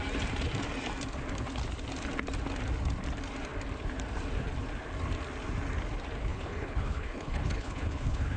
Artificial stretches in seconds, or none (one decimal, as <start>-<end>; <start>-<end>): 6.3-8.4